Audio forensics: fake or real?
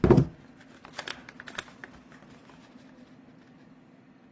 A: real